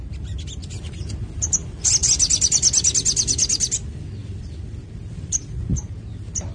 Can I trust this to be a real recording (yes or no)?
yes